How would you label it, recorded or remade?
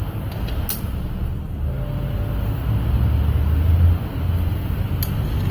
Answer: recorded